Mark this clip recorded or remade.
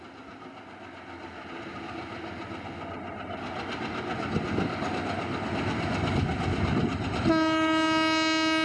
recorded